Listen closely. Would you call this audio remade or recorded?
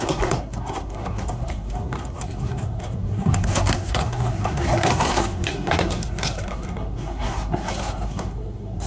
remade